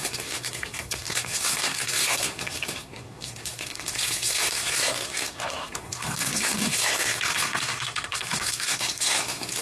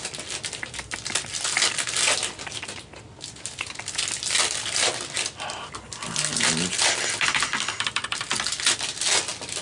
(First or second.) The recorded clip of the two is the second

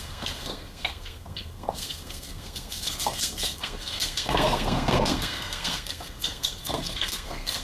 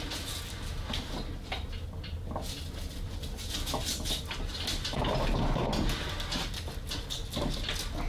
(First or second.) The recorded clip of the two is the second